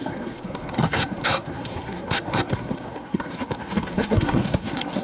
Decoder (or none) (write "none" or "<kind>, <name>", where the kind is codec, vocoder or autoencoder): codec, SNAC